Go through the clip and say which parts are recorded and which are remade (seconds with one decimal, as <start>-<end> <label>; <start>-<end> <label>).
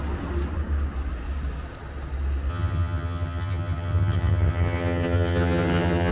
0.0-2.5 recorded; 2.5-6.1 remade